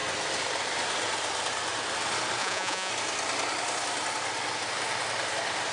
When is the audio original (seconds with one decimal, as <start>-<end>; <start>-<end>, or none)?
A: 0.0-2.4; 2.9-5.7